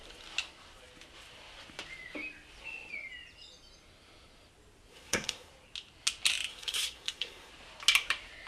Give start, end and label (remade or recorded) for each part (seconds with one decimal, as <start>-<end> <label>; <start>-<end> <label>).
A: 0.0-4.9 recorded; 4.9-5.5 remade; 5.5-6.5 recorded; 6.5-7.5 remade; 7.5-8.5 recorded